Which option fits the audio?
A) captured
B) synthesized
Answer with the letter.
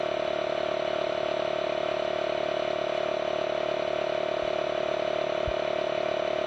A